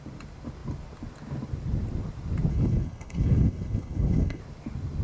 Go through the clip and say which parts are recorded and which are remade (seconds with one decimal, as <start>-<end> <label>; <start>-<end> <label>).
0.0-2.5 recorded; 2.5-4.4 remade; 4.4-5.0 recorded